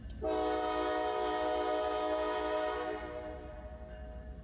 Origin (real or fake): real